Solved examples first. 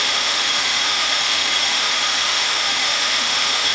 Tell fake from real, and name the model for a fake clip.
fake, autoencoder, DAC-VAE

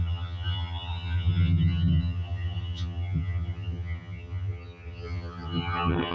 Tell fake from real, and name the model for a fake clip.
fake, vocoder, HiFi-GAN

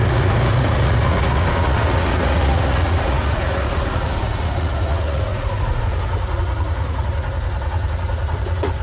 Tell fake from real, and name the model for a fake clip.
fake, vocoder, Vocos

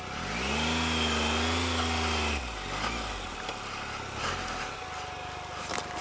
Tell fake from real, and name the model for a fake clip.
real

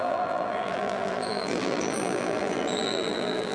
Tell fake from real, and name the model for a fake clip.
fake, vocoder, BigVGAN v2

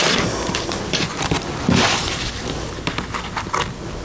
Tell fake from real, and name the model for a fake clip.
real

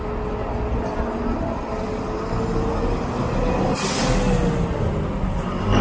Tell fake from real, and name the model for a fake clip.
real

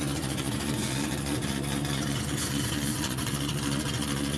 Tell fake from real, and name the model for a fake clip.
fake, vocoder, Vocos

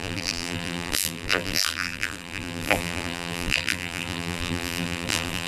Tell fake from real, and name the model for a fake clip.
fake, vocoder, BigVGAN v2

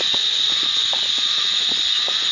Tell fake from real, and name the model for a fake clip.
real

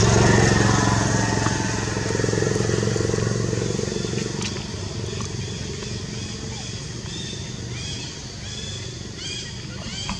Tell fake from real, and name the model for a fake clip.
real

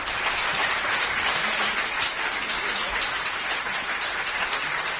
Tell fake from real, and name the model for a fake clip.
fake, vocoder, BigVGAN v2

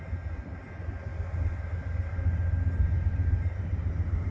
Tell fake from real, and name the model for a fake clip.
real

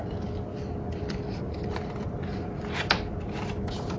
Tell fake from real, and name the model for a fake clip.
real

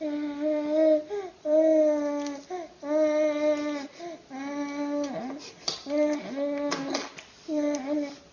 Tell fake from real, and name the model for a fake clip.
real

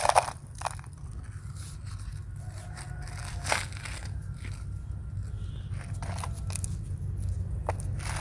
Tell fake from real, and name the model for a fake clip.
real